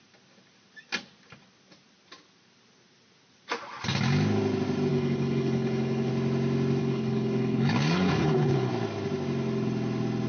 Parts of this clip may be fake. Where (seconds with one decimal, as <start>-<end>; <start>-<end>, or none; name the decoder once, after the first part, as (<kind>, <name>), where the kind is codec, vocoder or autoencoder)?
4.9-6.1 (codec, HILCodec); 6.8-8.7